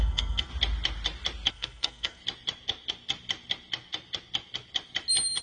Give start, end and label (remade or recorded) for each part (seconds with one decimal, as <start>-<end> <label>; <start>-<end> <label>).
0.0-0.5 remade; 0.5-1.5 recorded; 1.5-2.2 remade; 2.2-5.4 recorded